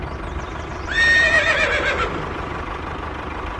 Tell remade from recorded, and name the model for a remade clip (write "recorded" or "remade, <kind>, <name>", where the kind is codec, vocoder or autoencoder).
recorded